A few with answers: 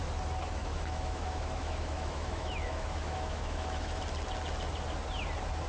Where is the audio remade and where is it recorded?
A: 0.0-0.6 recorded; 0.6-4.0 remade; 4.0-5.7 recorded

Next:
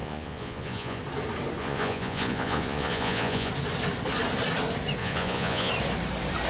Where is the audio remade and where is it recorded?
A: 0.0-1.0 remade; 1.0-1.6 recorded; 1.6-3.5 remade; 3.5-5.0 recorded; 5.0-5.7 remade; 5.7-6.5 recorded

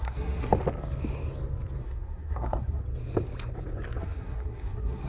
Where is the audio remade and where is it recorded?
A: 0.0-0.5 remade; 0.5-1.8 recorded; 1.8-2.8 remade; 2.8-4.0 recorded; 4.0-5.1 remade

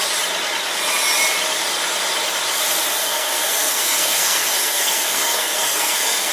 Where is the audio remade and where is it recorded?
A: 0.0-3.0 recorded; 3.0-6.3 remade

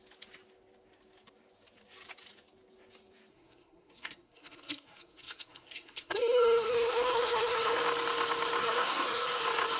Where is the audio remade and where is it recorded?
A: 0.0-3.3 recorded; 3.3-7.8 remade; 7.8-8.6 recorded; 8.6-9.4 remade; 9.4-9.8 recorded

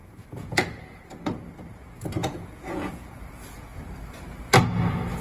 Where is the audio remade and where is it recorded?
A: 0.0-1.0 remade; 1.0-2.2 recorded; 2.2-3.8 remade; 3.8-5.2 recorded

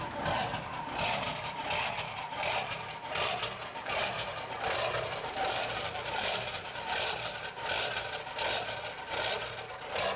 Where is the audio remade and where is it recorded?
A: 0.0-0.7 recorded; 0.7-2.9 remade; 2.9-3.7 recorded; 3.7-7.5 remade; 7.5-10.2 recorded